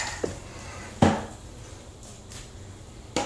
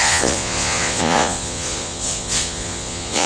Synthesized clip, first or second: second